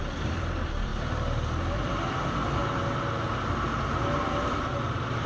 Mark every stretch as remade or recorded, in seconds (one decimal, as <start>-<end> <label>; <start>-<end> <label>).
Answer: 0.0-0.9 remade; 0.9-1.6 recorded; 1.6-2.6 remade; 2.6-3.4 recorded; 3.4-5.3 remade